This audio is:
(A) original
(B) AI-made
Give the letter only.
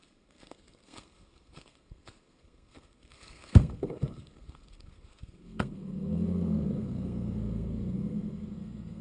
B